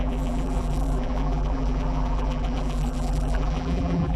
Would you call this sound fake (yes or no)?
yes